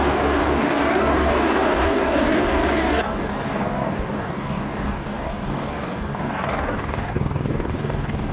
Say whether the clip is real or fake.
fake